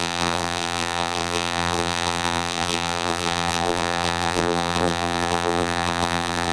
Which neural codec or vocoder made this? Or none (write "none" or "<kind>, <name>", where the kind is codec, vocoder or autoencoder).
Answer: vocoder, BigVGAN v2